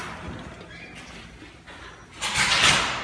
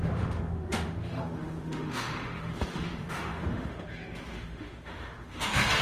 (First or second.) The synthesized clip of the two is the second